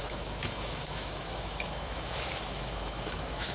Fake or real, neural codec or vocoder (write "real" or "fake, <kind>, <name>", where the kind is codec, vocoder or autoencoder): fake, autoencoder, DAC-VAE